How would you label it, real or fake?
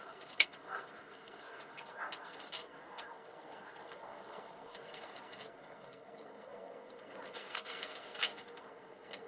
fake